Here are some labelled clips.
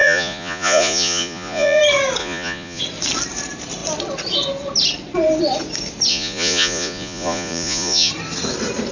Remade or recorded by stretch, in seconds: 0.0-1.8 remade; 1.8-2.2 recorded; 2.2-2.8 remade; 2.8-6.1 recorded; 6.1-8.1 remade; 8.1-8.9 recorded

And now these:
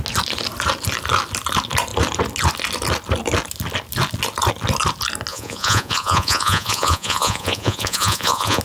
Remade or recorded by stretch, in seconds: 0.0-5.3 recorded; 5.3-8.6 remade